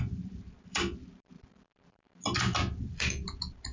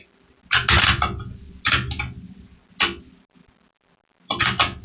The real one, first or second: second